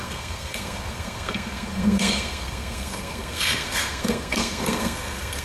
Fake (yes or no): yes